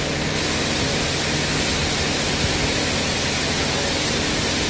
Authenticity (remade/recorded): recorded